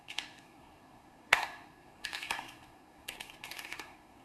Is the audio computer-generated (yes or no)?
yes